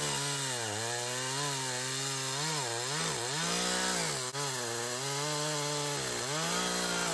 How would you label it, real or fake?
real